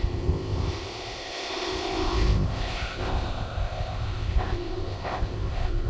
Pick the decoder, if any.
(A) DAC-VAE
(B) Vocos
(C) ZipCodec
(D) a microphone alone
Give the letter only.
C